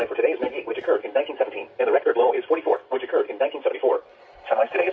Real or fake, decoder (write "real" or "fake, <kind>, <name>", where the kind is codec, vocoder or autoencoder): real